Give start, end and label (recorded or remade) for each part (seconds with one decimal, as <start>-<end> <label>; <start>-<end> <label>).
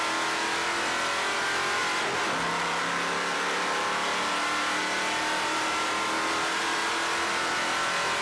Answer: 0.0-1.8 remade; 1.8-4.8 recorded; 4.8-6.8 remade; 6.8-7.3 recorded; 7.3-8.2 remade